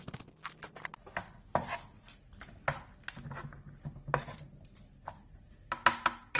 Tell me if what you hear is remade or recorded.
recorded